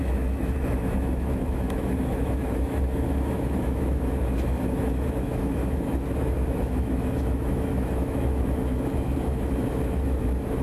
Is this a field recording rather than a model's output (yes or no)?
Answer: no